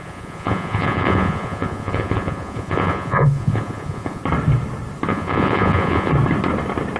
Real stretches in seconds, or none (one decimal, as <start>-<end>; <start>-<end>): 4.2-5.1; 6.1-7.0